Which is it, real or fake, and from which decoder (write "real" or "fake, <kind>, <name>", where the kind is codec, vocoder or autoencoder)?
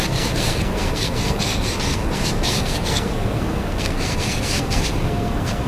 fake, codec, SNAC